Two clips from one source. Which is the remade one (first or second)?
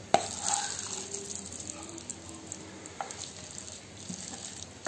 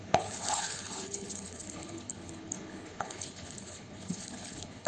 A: second